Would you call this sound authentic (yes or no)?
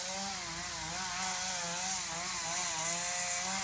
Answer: yes